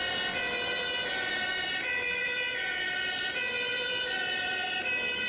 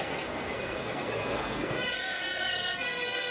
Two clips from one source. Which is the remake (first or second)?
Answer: second